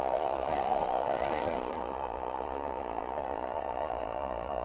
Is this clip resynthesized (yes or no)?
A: yes